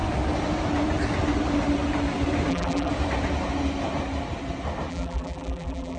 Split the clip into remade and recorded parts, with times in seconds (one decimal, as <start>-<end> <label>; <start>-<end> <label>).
0.0-2.5 recorded; 2.5-2.9 remade; 2.9-4.9 recorded; 4.9-6.0 remade